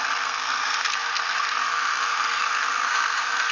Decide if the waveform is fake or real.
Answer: fake